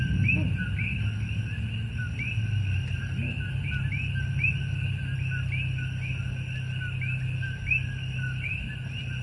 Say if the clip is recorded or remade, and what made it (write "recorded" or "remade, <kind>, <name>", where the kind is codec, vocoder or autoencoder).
recorded